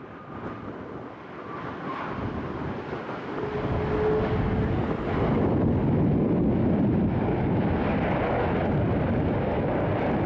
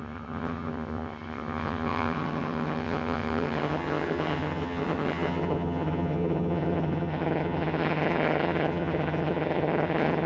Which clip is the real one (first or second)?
first